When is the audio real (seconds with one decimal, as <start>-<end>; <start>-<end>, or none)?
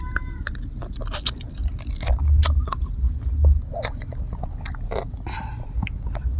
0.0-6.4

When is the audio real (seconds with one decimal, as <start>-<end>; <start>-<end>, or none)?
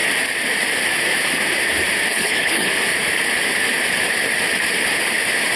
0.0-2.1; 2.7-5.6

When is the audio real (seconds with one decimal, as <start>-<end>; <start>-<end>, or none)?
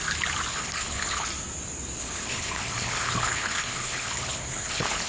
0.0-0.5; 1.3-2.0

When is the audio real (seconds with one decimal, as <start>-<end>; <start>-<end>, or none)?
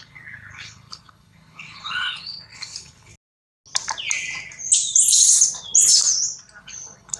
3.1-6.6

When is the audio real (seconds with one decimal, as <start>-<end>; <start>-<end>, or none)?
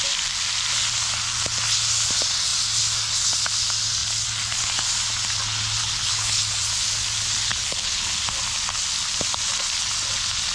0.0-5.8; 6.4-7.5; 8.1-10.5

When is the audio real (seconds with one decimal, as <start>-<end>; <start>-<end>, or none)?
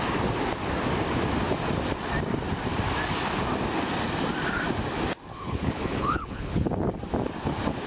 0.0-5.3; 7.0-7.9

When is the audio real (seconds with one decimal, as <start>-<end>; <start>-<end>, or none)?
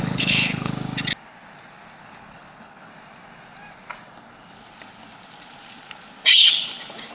0.7-2.0; 2.9-7.1